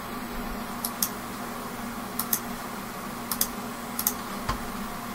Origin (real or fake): real